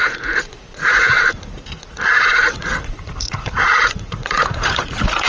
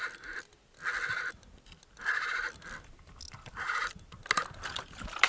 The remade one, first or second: first